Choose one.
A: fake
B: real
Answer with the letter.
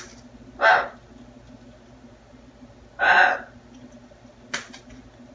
B